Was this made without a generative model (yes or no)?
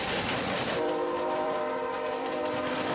no